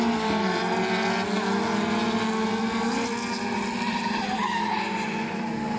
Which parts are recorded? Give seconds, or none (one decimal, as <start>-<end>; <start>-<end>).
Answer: 0.0-3.9; 4.7-5.8